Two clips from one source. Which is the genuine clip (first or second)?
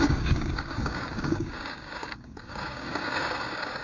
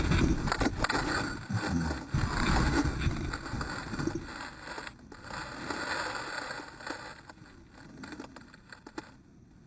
second